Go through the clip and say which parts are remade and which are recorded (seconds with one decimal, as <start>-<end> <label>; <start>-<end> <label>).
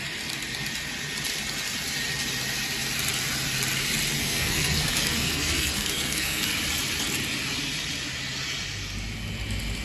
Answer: 0.0-4.2 recorded; 4.2-6.5 remade; 6.5-9.8 recorded